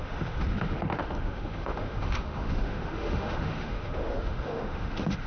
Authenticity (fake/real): fake